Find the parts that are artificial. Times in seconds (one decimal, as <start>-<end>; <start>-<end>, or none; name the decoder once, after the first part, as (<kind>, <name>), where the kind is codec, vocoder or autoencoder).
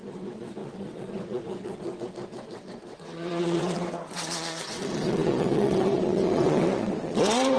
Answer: 0.0-7.6 (vocoder, WaveNeXt)